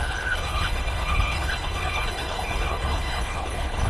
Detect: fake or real fake